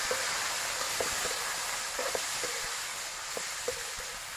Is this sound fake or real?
real